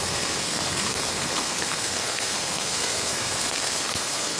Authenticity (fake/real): fake